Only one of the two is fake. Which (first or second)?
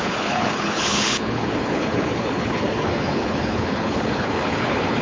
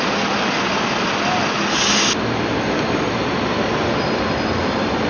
first